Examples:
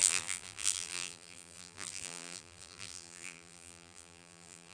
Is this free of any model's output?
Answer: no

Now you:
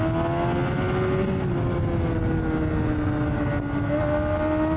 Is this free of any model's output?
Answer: yes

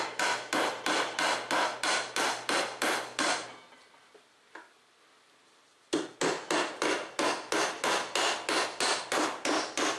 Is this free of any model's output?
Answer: yes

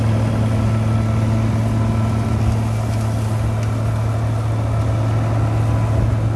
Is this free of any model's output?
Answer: yes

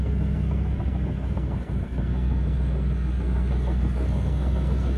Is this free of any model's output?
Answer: no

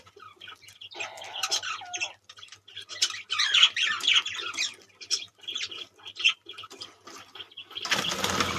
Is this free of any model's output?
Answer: no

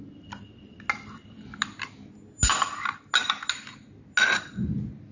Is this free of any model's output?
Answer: yes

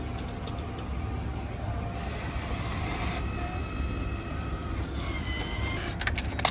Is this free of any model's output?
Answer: yes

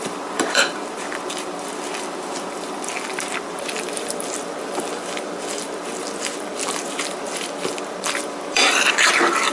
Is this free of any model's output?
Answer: no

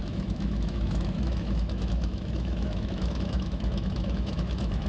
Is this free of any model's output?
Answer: no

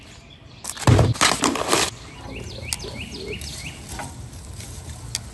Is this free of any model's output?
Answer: yes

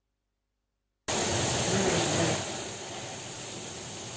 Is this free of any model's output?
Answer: yes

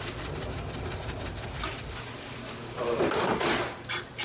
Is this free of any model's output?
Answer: yes